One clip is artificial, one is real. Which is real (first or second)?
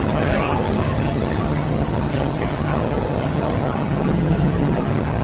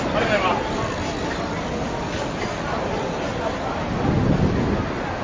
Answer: second